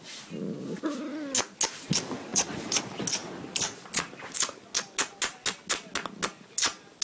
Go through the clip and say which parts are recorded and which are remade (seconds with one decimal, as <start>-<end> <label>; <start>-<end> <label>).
0.0-2.3 recorded; 2.3-2.8 remade; 2.8-7.0 recorded